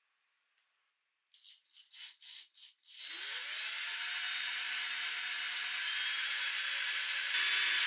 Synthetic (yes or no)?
no